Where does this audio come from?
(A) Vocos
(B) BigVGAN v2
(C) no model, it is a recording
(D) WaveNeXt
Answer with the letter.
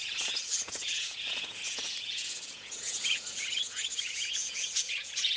A